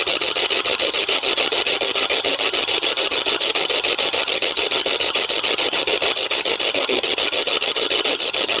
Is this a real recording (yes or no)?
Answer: no